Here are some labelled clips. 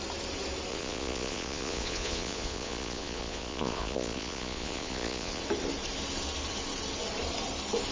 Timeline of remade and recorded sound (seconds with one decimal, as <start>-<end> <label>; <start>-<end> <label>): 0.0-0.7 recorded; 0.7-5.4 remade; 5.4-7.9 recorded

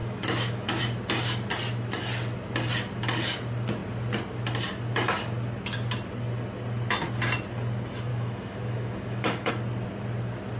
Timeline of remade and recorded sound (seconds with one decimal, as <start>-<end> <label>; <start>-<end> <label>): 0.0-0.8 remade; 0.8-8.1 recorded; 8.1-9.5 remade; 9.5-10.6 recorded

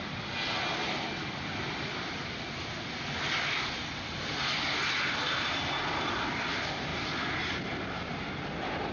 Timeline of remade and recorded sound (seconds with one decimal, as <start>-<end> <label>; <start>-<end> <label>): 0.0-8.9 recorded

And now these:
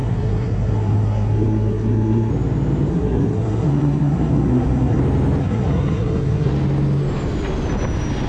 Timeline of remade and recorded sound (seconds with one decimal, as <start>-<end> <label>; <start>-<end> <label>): 0.0-2.3 remade; 2.3-2.9 recorded; 2.9-5.0 remade; 5.0-5.4 recorded; 5.4-6.5 remade; 6.5-8.3 recorded

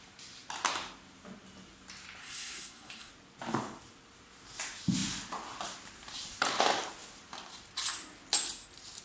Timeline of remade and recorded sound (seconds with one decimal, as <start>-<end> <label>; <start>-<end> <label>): 0.0-2.2 recorded; 2.2-3.1 remade; 3.1-9.0 recorded

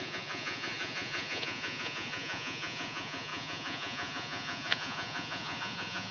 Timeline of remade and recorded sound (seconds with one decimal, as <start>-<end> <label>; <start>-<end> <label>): 0.0-6.1 remade

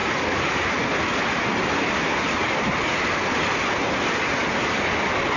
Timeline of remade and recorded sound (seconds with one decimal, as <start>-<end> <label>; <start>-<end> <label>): 0.0-5.4 recorded

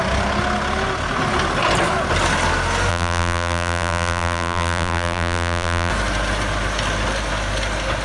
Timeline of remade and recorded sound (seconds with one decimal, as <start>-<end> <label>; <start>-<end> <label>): 0.0-2.9 recorded; 2.9-5.9 remade; 5.9-8.0 recorded